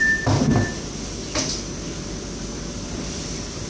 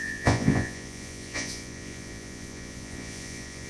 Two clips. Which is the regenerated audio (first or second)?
second